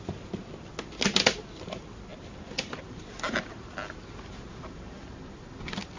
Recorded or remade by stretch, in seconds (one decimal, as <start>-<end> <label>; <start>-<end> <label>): 0.0-6.0 recorded